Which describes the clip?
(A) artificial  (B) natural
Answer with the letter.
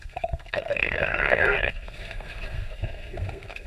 A